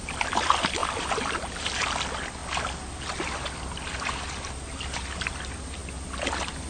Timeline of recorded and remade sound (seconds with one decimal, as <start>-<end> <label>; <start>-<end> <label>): 0.0-0.8 recorded; 0.8-2.0 remade; 2.0-6.7 recorded